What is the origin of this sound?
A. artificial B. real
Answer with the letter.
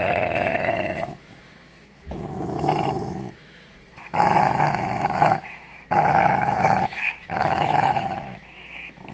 A